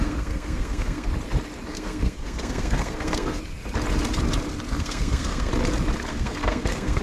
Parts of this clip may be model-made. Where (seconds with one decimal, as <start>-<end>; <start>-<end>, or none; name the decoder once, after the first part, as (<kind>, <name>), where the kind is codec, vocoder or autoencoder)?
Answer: 0.0-1.1 (codec, SNAC); 1.7-3.4; 4.7-5.5; 6.1-7.0

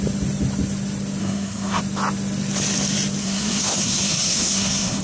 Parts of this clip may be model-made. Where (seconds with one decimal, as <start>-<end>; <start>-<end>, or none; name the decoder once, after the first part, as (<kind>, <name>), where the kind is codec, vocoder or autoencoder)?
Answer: 1.2-1.8 (codec, SNAC); 3.2-5.0